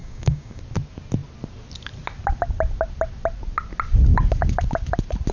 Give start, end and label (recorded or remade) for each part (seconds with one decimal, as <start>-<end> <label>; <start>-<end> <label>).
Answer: 0.0-0.6 remade; 0.6-5.3 recorded